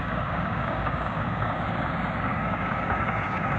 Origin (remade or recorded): remade